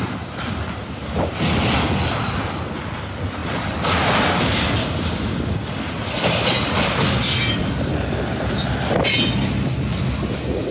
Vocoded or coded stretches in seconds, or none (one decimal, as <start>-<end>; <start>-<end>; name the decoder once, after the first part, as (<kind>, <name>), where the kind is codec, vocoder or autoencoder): none